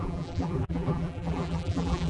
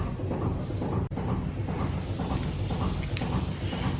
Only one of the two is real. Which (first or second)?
second